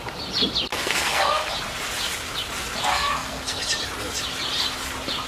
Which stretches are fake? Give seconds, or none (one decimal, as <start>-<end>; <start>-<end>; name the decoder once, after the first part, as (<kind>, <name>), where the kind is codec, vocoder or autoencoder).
0.7-1.5 (codec, SNAC); 2.9-3.6